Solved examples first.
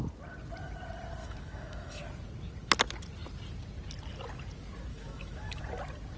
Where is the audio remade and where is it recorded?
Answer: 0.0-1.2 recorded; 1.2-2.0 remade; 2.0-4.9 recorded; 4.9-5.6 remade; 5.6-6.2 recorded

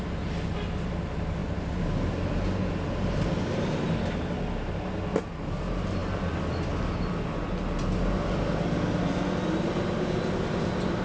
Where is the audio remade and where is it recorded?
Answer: 0.0-11.0 recorded

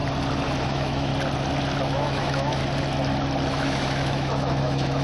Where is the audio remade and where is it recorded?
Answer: 0.0-0.6 recorded; 0.6-1.1 remade; 1.1-1.8 recorded; 1.8-2.6 remade; 2.6-3.5 recorded; 3.5-5.0 remade